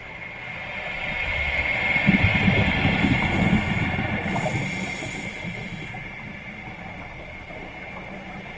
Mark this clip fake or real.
real